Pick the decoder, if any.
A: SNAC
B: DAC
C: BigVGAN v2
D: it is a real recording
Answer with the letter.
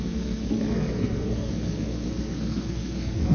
A